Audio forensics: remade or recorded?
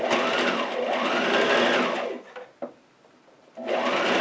recorded